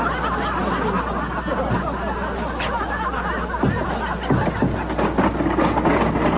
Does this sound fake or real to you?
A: real